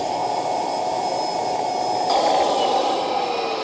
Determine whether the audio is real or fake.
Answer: real